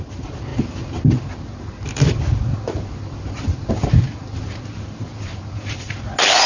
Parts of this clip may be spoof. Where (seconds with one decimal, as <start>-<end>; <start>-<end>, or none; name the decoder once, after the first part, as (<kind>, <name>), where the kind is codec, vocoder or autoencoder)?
none